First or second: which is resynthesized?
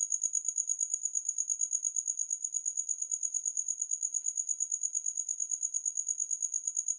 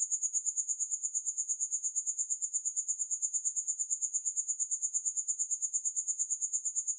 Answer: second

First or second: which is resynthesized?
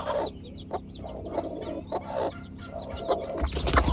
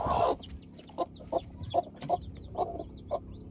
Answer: second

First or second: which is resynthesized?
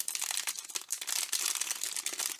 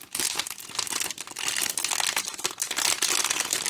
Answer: first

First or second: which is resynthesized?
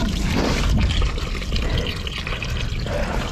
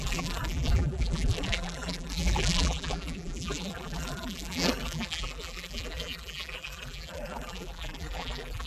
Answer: second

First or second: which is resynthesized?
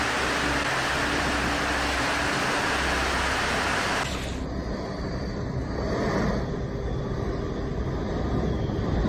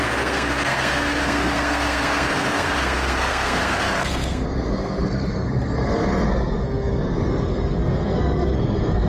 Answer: second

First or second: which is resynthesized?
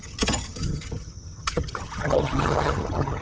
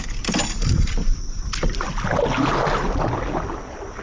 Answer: first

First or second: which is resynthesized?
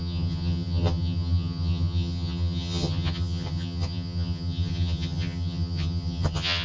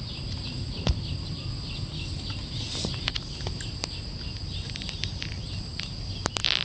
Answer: first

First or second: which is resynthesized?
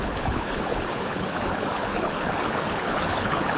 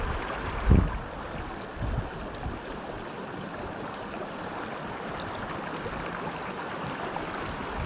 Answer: first